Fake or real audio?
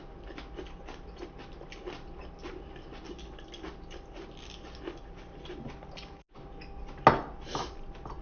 real